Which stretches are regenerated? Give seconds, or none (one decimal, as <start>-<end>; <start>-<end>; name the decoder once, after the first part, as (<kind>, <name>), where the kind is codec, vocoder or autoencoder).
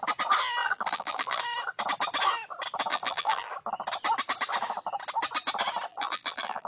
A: 0.6-1.4 (vocoder, BigVGAN v2); 2.9-3.5; 5.9-6.7